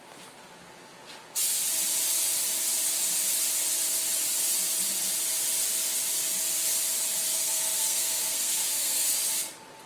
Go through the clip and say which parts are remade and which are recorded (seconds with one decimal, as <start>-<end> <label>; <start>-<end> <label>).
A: 0.0-7.3 recorded; 7.3-9.2 remade; 9.2-9.9 recorded